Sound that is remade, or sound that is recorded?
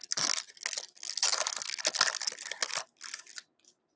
recorded